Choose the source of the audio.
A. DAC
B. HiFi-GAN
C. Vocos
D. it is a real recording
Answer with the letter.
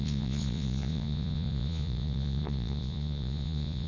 C